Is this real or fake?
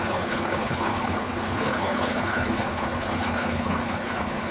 fake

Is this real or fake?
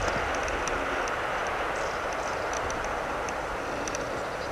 real